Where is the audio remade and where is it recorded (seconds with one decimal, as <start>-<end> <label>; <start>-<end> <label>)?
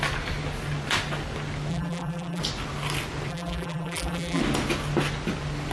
0.0-1.7 recorded; 1.7-2.4 remade; 2.4-3.3 recorded; 3.3-4.4 remade; 4.4-5.7 recorded